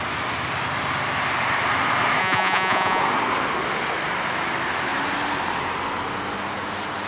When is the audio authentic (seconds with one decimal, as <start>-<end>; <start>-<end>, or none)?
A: 0.0-2.2; 3.0-7.1